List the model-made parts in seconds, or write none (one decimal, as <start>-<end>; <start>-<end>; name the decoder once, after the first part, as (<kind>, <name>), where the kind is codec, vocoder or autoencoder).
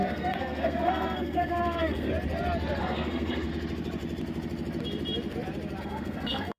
0.0-2.1 (codec, SNAC); 2.8-3.5; 5.8-6.6